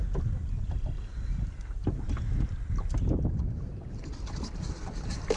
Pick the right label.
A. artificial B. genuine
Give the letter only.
B